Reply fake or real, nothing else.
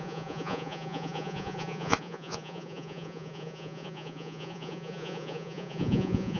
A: fake